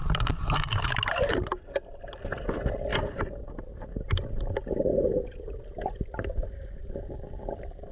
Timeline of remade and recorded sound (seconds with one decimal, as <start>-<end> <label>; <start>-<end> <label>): 0.0-7.9 recorded